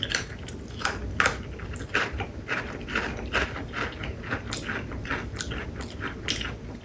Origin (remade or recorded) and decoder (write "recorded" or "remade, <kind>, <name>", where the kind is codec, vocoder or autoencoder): recorded